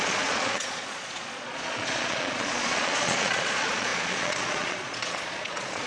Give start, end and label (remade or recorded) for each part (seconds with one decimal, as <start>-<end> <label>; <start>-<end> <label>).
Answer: 0.0-5.9 remade